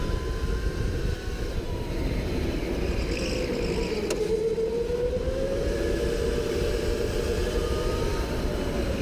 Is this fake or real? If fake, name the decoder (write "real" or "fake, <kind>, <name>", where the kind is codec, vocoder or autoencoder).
real